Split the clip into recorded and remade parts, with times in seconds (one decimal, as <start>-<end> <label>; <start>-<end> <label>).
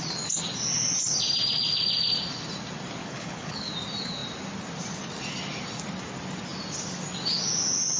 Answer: 0.0-3.0 recorded; 3.0-3.7 remade; 3.7-8.0 recorded